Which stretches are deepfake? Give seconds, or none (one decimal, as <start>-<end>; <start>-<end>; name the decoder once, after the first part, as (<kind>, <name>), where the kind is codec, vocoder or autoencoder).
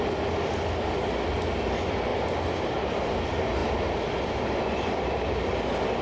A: none